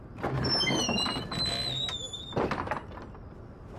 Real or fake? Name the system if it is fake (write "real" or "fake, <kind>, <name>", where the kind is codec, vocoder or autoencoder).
real